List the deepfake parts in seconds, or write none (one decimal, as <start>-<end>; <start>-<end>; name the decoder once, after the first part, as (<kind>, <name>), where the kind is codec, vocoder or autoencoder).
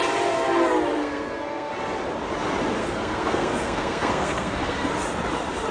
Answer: 0.9-1.7 (codec, SNAC); 2.8-4.9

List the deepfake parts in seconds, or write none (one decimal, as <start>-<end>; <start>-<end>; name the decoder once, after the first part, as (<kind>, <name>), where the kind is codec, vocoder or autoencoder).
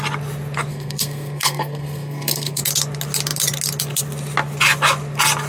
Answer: 0.7-2.6 (codec, SNAC)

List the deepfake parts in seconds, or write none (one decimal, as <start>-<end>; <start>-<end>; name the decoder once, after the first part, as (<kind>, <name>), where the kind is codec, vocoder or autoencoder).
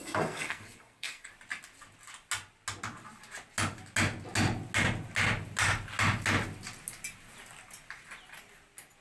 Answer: 0.0-1.3 (codec, SNAC)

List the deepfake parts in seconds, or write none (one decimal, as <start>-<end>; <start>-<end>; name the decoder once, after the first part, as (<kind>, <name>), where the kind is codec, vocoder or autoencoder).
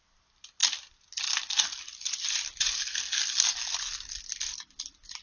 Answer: none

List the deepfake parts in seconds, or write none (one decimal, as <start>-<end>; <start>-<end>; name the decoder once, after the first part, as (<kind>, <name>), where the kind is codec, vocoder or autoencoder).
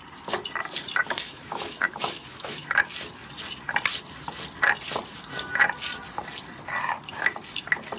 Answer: 1.0-2.7 (autoencoder, DAC-VAE)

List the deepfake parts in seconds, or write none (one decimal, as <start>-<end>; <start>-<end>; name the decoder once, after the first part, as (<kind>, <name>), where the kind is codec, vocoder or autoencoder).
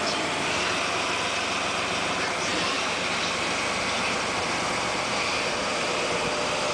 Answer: none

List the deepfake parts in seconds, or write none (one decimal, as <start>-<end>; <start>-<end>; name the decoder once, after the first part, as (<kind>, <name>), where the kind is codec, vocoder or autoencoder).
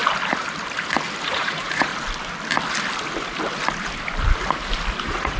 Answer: 1.3-1.9 (vocoder, Vocos); 5.0-5.4